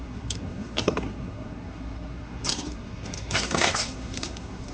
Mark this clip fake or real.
fake